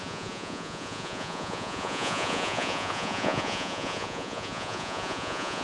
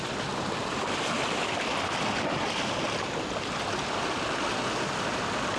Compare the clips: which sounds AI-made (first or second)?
first